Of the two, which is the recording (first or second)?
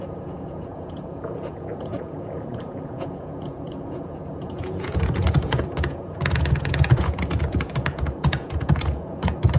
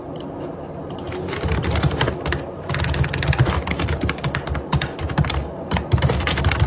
second